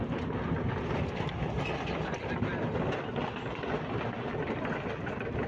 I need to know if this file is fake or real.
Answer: real